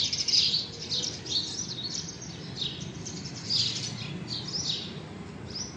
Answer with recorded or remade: recorded